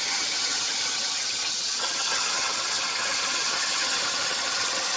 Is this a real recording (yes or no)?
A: no